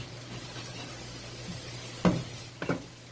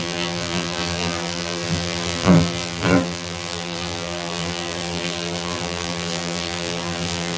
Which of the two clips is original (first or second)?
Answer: first